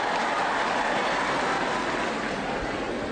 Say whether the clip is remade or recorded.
recorded